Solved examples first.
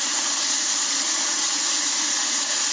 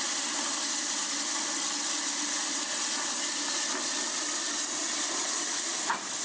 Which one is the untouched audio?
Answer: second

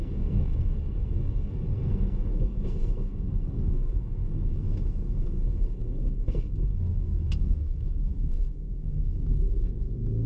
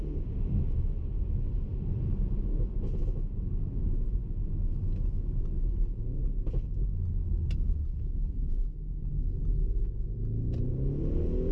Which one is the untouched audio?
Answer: second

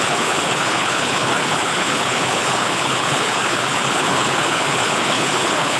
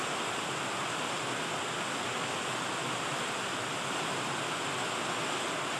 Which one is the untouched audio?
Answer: second